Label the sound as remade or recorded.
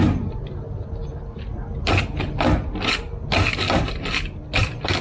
recorded